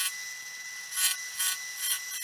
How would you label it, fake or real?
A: real